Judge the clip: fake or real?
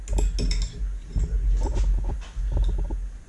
real